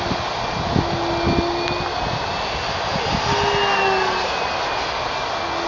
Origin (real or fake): real